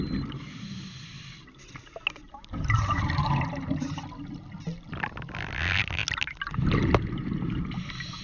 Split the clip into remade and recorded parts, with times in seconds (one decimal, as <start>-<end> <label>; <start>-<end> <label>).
0.0-8.2 recorded